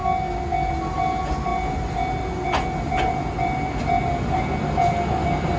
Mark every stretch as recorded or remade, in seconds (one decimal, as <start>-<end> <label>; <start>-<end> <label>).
0.0-5.6 recorded